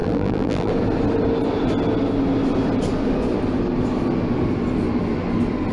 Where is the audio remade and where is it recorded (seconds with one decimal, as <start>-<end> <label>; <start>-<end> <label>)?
0.0-0.7 remade; 0.7-5.7 recorded